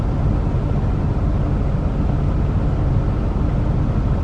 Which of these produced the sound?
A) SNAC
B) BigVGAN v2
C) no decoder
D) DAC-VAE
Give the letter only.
C